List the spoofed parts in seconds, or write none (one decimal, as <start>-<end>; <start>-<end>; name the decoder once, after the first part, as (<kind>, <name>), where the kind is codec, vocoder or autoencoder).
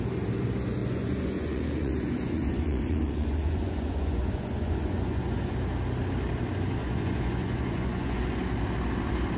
0.8-5.5 (vocoder, Vocos); 6.8-8.2